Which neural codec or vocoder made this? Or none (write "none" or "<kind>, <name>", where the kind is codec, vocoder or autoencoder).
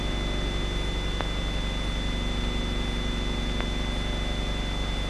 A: none